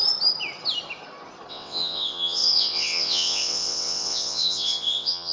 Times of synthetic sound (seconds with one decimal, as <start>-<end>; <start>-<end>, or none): 1.5-5.3